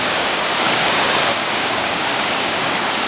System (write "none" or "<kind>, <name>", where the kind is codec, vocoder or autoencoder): codec, DAC